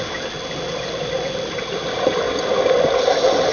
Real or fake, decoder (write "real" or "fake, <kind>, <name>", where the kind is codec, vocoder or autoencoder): real